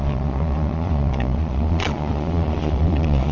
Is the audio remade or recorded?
remade